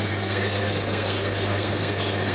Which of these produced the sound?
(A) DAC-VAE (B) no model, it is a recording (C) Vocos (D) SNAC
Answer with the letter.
D